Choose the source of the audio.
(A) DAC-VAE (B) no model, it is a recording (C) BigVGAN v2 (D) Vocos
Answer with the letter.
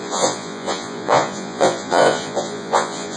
D